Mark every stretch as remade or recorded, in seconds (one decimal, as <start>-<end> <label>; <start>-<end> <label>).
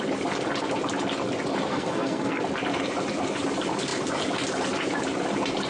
0.0-1.7 recorded; 1.7-2.4 remade; 2.4-5.7 recorded